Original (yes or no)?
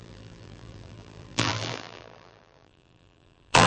no